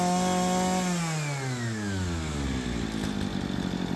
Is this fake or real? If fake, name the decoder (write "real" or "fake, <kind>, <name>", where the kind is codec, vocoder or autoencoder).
real